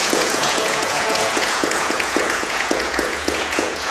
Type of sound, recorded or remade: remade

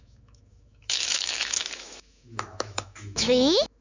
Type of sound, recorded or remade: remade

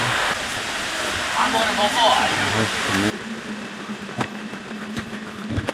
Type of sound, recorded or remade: remade